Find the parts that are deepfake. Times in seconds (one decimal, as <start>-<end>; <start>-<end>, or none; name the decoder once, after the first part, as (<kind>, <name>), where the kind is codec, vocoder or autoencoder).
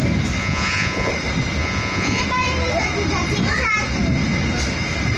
0.4-1.1 (vocoder, Vocos); 1.6-2.2